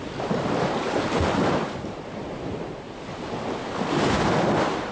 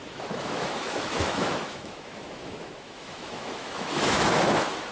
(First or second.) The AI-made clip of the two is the second